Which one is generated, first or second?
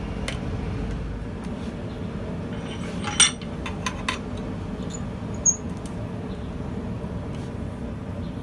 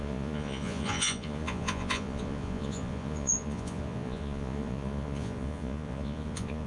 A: second